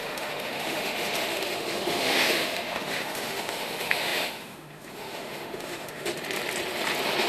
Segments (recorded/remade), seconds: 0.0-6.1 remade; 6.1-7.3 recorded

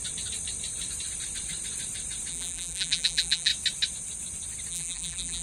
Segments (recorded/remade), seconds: 0.0-2.3 recorded; 2.3-3.5 remade; 3.5-4.7 recorded; 4.7-5.4 remade

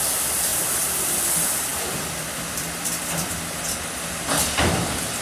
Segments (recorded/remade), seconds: 0.0-5.2 remade

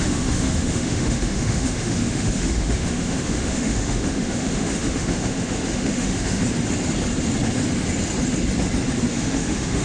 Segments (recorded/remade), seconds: 0.0-6.4 remade; 6.4-9.1 recorded; 9.1-9.8 remade

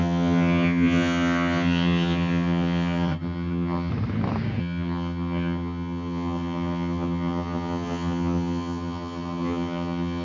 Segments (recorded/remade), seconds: 0.0-3.9 remade; 3.9-4.6 recorded; 4.6-10.2 remade